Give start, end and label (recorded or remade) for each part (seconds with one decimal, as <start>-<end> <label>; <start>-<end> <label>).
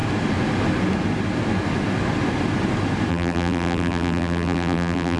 0.0-3.1 recorded; 3.1-5.2 remade